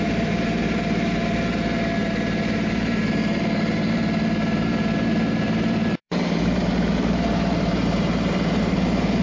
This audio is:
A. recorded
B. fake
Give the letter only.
B